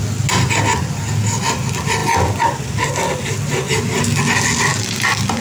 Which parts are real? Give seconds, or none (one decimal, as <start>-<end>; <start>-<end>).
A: 0.0-5.4